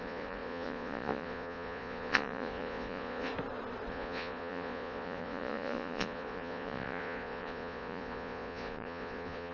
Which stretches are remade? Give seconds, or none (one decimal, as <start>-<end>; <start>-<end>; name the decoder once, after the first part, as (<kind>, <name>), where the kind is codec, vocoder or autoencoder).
0.0-3.3 (vocoder, Vocos); 3.9-9.5

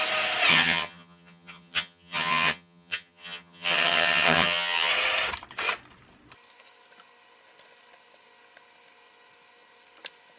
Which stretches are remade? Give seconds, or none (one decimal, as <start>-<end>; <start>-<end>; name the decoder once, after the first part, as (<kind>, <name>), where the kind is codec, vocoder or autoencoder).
0.5-4.9 (vocoder, HiFi-GAN)

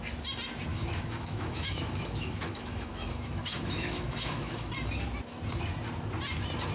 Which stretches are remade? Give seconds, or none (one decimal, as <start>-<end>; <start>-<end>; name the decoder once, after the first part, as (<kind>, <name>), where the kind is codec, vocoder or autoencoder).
0.7-4.7 (autoencoder, DAC-VAE)

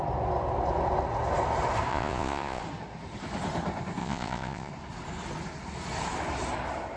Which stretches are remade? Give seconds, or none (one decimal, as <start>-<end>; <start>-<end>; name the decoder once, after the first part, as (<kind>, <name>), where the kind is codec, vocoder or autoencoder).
1.9-2.6 (vocoder, Vocos); 4.0-4.7

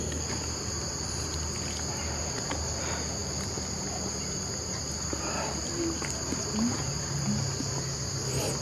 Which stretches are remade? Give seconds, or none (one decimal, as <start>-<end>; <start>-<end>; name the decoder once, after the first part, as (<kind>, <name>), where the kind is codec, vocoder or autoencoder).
none

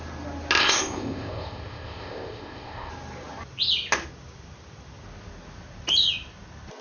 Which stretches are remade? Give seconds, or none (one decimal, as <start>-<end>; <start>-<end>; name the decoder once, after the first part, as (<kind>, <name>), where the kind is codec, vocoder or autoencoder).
0.6-2.9 (codec, ZipCodec)

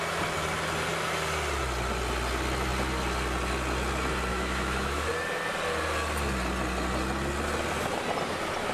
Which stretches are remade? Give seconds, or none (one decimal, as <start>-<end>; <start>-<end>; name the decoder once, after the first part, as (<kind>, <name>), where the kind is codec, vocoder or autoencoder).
4.3-5.1 (autoencoder, DAC-VAE)